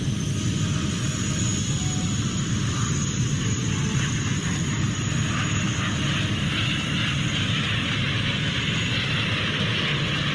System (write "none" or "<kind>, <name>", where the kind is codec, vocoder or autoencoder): none